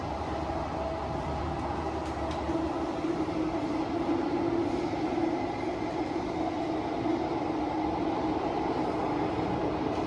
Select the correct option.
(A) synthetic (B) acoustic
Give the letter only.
B